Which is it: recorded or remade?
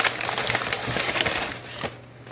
recorded